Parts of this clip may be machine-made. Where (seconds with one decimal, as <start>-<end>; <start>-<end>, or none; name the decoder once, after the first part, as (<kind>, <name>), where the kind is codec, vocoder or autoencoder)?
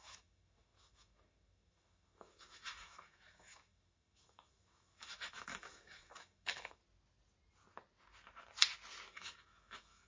0.0-6.8 (autoencoder, DAC-VAE); 9.1-10.1